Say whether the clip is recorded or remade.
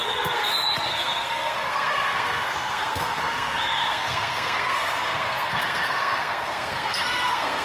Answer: remade